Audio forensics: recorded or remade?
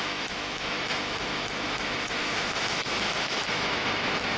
remade